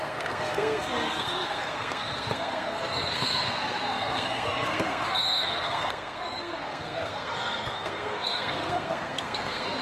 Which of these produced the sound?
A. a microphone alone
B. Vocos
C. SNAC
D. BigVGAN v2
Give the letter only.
C